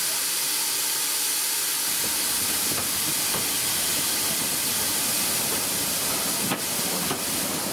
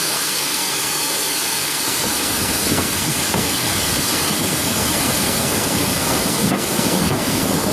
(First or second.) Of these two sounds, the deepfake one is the second